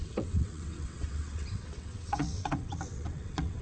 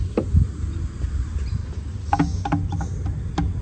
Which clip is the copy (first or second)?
first